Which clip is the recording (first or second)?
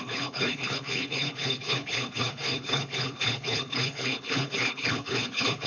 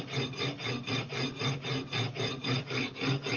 second